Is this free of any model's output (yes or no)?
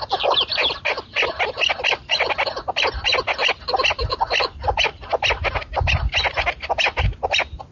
yes